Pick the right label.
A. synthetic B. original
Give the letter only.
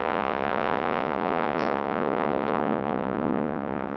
A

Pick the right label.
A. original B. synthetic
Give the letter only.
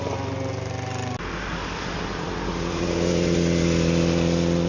A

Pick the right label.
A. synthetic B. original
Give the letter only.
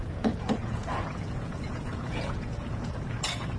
A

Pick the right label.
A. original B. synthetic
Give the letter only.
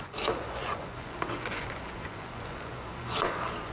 B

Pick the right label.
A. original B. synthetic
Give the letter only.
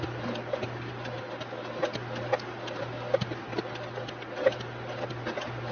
A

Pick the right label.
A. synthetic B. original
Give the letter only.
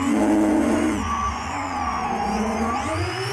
A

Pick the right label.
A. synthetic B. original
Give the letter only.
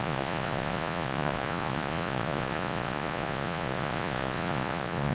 A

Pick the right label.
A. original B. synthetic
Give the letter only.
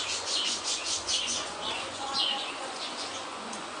B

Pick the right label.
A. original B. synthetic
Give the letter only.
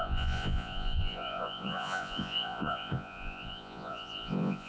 B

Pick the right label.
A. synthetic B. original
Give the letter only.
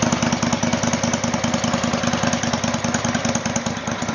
B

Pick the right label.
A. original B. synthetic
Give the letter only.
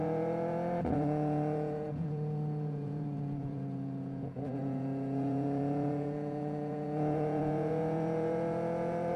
B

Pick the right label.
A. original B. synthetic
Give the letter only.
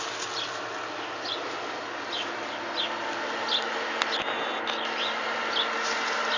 A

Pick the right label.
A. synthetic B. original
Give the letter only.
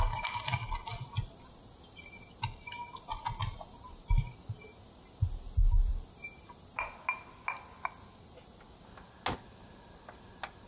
B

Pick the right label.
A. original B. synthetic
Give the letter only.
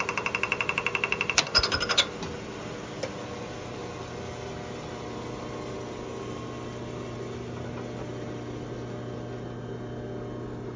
A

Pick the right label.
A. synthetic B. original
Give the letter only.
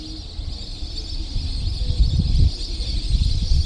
B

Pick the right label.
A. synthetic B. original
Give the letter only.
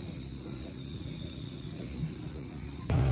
A